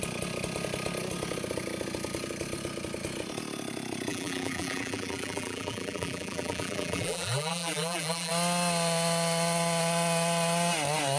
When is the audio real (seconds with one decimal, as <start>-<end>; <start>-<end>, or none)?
0.0-4.1; 8.3-11.2